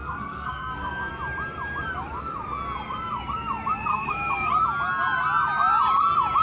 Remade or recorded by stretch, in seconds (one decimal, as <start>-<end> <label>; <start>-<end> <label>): 0.0-1.1 remade; 1.1-3.9 recorded; 3.9-4.5 remade; 4.5-6.4 recorded